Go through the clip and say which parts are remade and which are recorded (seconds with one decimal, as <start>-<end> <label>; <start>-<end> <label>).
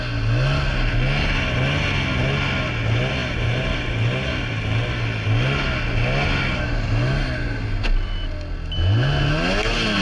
0.0-3.2 recorded; 3.2-4.5 remade; 4.5-10.0 recorded